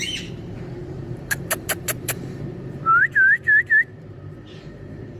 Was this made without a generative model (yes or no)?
no